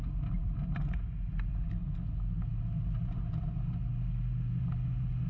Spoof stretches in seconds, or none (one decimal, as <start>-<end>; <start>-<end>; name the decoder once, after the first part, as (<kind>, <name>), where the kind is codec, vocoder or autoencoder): none